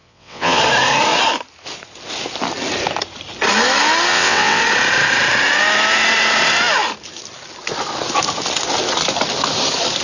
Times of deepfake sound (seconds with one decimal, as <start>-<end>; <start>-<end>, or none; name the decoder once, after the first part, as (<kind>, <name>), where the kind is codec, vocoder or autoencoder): 0.0-0.6 (vocoder, WaveNeXt); 4.1-4.6